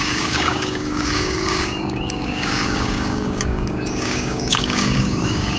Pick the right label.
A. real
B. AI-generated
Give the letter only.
B